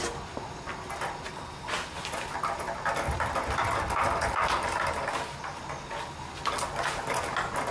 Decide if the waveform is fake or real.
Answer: real